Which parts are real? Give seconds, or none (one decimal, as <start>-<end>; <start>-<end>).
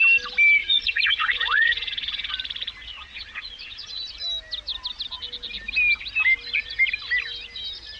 0.0-0.6; 2.3-2.9; 4.0-8.0